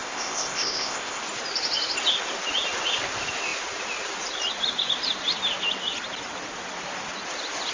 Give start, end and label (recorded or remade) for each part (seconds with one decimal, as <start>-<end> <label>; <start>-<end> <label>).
0.0-1.2 remade; 1.2-7.7 recorded